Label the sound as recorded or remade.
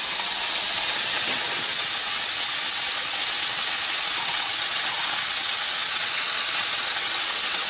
remade